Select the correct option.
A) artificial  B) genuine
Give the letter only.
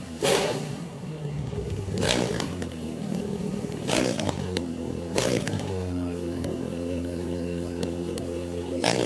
A